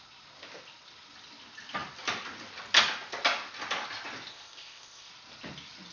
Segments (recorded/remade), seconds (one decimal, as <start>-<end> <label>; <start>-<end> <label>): 0.0-4.3 recorded; 4.3-5.1 remade; 5.1-5.9 recorded